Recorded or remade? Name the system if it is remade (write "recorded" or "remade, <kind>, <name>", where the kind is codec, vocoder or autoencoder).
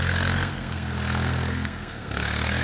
remade, codec, SNAC